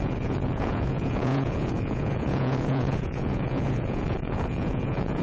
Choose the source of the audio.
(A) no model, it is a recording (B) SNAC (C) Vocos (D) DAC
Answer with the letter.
C